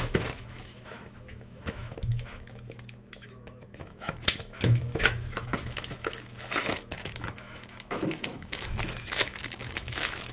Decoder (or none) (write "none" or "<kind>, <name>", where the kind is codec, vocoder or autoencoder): autoencoder, DAC-VAE